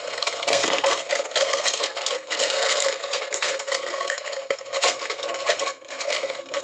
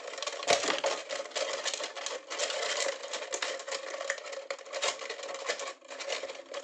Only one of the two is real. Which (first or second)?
second